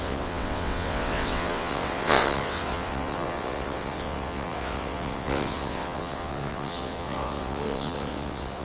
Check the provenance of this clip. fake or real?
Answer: fake